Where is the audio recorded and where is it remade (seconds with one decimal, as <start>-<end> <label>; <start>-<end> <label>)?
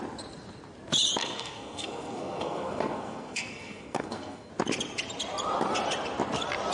0.0-1.2 recorded; 1.2-4.5 remade; 4.5-6.7 recorded